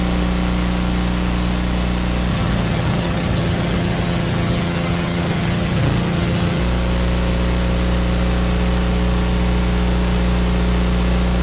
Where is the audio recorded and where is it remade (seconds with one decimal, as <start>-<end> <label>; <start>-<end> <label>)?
0.0-2.3 recorded; 2.3-6.6 remade; 6.6-11.4 recorded